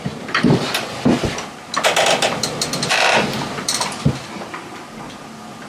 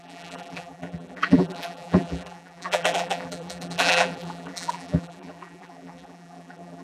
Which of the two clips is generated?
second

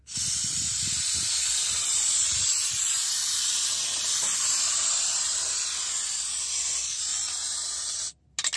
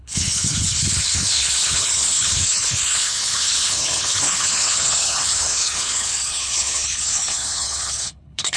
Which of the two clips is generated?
second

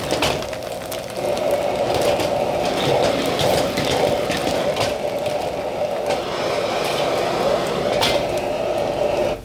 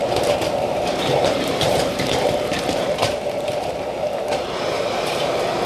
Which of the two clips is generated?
second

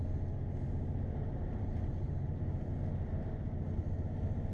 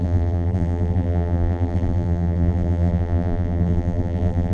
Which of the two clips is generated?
second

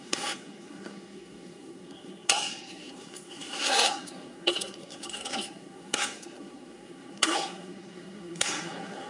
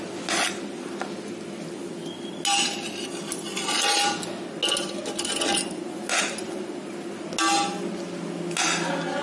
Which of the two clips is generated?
first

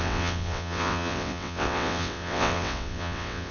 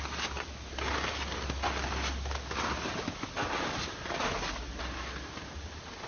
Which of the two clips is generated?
first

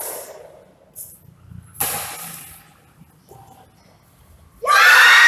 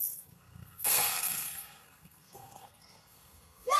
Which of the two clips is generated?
second